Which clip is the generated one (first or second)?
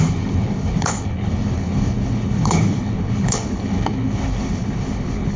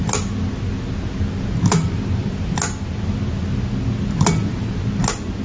first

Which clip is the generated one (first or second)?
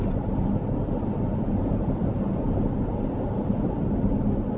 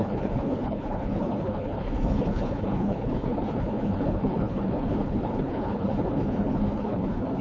second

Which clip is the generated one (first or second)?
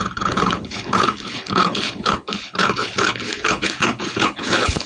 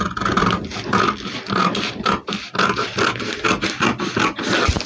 first